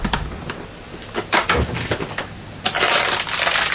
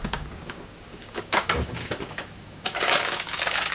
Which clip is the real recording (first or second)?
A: first